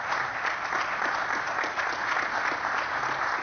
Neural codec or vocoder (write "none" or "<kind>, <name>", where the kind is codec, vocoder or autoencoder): none